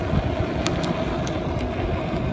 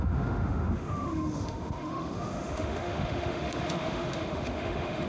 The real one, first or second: first